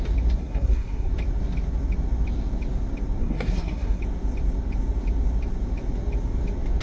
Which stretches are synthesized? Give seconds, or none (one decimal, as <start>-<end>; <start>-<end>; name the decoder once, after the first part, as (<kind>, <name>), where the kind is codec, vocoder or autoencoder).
0.4-1.1 (codec, SNAC); 3.2-4.0